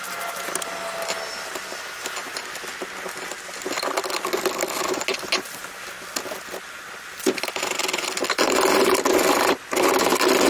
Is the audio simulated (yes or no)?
no